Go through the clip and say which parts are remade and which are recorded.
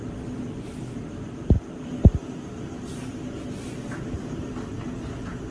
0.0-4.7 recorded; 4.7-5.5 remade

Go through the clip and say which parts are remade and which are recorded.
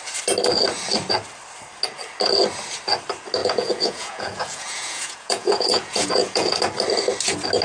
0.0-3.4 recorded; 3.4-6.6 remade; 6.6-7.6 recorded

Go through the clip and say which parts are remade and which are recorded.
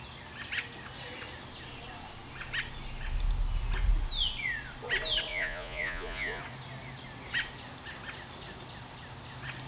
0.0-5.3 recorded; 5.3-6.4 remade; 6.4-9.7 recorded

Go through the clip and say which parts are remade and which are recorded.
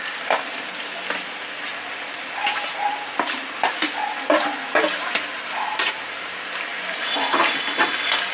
0.0-8.3 recorded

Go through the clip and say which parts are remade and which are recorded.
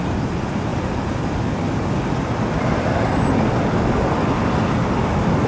0.0-5.5 recorded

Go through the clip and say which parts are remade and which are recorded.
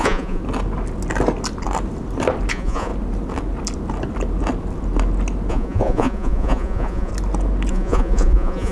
0.0-0.4 remade; 0.4-2.5 recorded; 2.5-2.9 remade; 2.9-5.5 recorded; 5.5-7.1 remade; 7.1-7.7 recorded; 7.7-8.7 remade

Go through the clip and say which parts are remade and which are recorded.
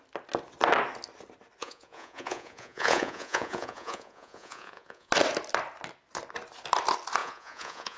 0.0-1.6 recorded; 1.6-5.1 remade; 5.1-7.2 recorded; 7.2-8.0 remade